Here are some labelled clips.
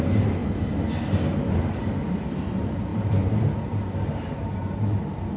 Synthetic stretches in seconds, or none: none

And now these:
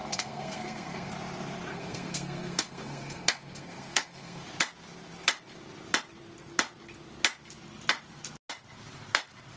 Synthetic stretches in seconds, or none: 0.0-1.1 (codec, SNAC); 1.7-4.4

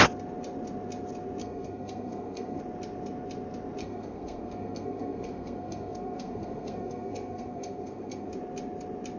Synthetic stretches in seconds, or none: 1.4-2.6 (codec, SNAC); 3.8-8.3

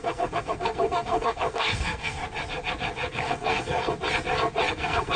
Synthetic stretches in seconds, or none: 0.0-2.2 (codec, SNAC); 3.1-3.9; 4.7-5.2